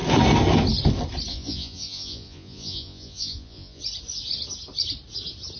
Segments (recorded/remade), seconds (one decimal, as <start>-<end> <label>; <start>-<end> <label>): 0.0-1.3 recorded; 1.3-3.8 remade; 3.8-5.6 recorded